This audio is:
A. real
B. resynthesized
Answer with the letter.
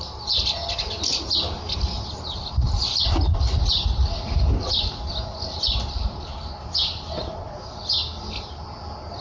A